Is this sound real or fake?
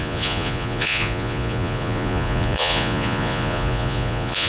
fake